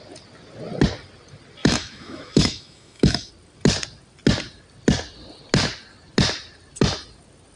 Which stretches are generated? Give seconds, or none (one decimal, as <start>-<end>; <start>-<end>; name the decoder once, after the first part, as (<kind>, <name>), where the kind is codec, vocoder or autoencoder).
1.6-3.3 (autoencoder, DAC-VAE)